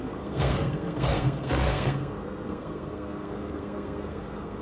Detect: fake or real fake